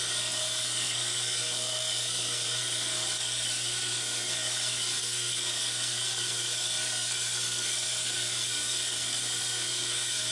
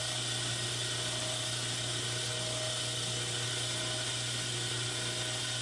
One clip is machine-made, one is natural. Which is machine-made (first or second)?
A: first